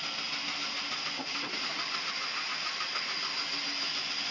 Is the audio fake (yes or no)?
no